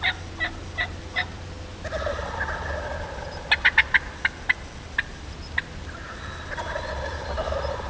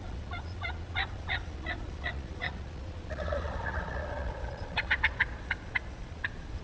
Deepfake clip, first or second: second